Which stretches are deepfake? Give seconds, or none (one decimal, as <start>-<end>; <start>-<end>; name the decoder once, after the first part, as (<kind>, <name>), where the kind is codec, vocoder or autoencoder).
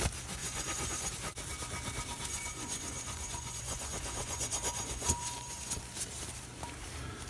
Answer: 0.4-1.1 (vocoder, Vocos); 2.3-5.8